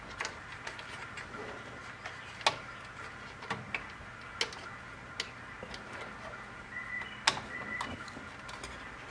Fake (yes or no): no